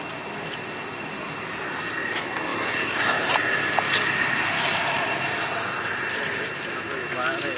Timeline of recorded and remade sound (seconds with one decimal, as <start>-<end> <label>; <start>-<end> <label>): 0.0-7.6 recorded